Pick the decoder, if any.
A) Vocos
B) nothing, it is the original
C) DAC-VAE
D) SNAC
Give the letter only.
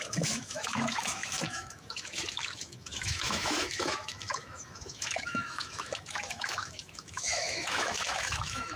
C